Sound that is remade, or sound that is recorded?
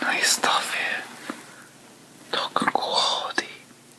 recorded